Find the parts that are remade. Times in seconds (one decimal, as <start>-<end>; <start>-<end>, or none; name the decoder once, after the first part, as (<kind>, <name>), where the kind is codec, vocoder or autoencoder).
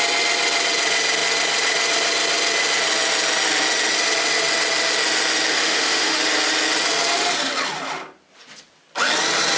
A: 5.5-6.2 (autoencoder, DAC-VAE)